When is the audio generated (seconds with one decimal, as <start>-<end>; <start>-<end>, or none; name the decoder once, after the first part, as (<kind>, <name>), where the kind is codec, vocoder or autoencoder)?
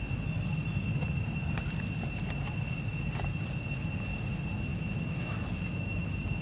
4.7-6.4 (autoencoder, DAC-VAE)